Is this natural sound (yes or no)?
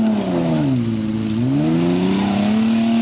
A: yes